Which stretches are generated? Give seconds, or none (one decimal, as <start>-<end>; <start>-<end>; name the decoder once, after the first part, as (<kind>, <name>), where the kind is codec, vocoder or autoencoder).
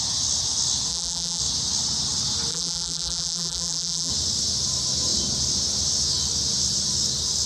0.9-1.4 (vocoder, BigVGAN v2); 2.5-4.1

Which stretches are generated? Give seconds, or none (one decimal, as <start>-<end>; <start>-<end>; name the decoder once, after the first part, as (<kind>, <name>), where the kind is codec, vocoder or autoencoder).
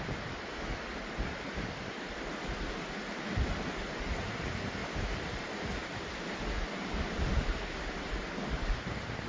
none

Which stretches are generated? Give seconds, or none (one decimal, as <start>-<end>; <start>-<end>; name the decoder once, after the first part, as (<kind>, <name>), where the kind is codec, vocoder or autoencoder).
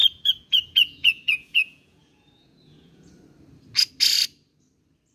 0.0-3.1 (vocoder, Vocos)